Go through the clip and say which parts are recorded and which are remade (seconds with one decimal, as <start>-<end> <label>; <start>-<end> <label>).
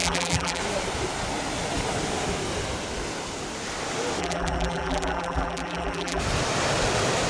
0.0-0.6 remade; 0.6-4.2 recorded; 4.2-6.2 remade; 6.2-7.3 recorded